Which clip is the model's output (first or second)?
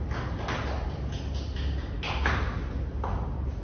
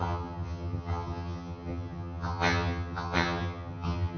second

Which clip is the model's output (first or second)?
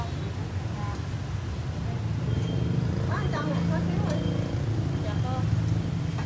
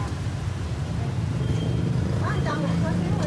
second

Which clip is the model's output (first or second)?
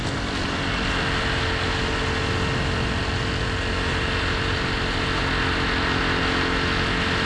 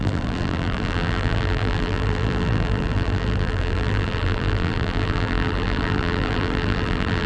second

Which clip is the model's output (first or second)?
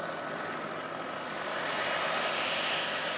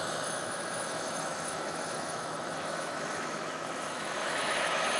second